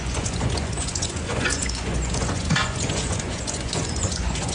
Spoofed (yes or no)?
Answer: yes